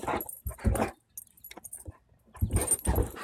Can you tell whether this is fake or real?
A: real